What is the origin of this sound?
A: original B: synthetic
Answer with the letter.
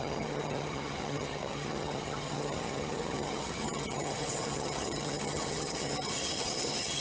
B